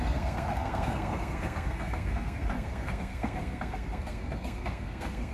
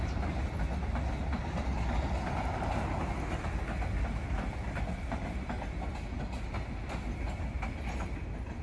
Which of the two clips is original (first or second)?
second